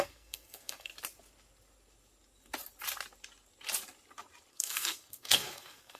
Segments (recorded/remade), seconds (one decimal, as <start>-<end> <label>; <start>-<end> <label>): 0.0-0.9 remade; 0.9-4.5 recorded; 4.5-6.0 remade